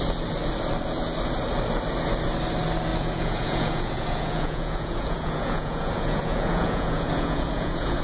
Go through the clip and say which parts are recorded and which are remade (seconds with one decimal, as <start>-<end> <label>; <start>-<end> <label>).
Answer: 0.0-2.9 recorded; 2.9-8.0 remade